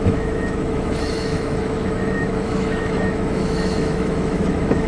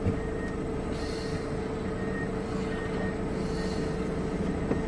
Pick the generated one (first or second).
first